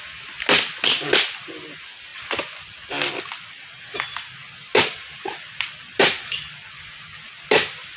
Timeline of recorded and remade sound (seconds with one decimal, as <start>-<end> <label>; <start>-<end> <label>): 0.0-8.0 recorded